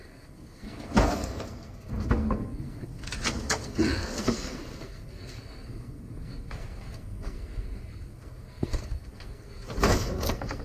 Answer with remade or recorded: remade